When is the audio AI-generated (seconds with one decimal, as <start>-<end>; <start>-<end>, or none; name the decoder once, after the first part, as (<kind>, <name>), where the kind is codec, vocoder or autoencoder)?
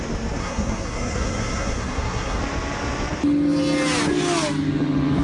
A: 0.4-2.4 (codec, SNAC)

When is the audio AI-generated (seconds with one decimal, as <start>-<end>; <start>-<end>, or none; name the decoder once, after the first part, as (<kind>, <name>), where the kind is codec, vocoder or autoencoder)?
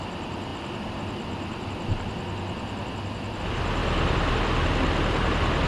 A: none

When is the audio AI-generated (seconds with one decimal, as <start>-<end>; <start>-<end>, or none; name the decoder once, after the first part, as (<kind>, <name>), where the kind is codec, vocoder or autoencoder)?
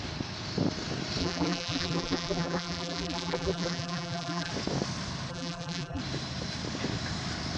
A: 1.2-4.5 (vocoder, BigVGAN v2); 5.3-6.0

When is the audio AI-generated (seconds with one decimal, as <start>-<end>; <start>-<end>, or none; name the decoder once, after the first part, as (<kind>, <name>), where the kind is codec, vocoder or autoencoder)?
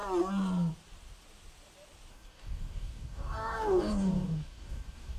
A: 2.1-5.2 (codec, DAC)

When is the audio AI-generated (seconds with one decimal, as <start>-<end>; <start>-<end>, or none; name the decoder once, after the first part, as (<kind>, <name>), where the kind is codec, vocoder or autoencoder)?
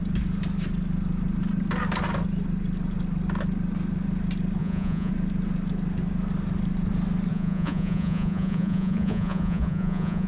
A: 4.6-5.1 (vocoder, Vocos); 7.3-10.3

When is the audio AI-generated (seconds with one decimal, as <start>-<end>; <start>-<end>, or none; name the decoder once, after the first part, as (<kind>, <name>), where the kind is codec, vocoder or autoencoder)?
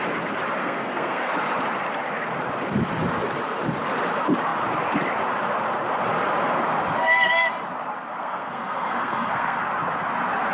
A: 0.6-1.3 (codec, SNAC); 8.2-9.6